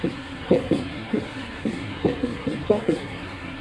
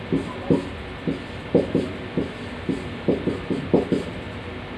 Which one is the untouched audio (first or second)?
second